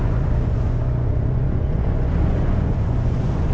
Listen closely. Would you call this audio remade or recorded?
remade